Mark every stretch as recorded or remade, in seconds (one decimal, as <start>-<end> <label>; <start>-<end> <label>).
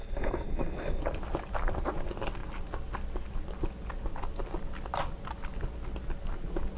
0.0-1.0 remade; 1.0-6.8 recorded